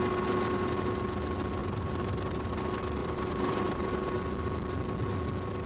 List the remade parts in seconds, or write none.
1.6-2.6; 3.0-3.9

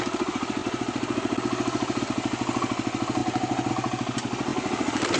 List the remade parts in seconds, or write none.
none

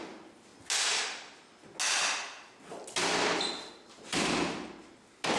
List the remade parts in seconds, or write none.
none

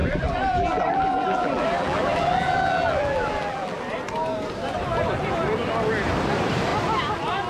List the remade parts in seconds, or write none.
0.0-3.8

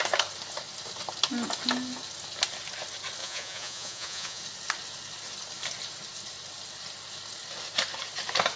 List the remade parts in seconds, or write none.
3.2-4.4

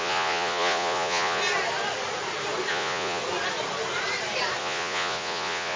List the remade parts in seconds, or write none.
0.0-1.4; 2.7-3.2; 4.6-5.8

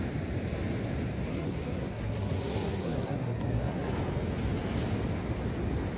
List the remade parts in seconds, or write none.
1.3-3.9